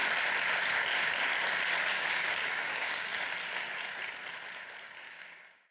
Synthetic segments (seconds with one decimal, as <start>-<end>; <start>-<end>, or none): 1.9-3.1; 4.8-5.7